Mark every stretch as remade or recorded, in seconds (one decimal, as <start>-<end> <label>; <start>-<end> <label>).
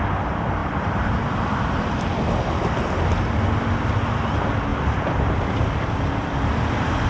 0.0-7.1 recorded